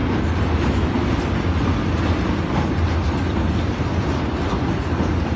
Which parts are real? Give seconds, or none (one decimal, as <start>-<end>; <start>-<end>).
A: 0.0-5.4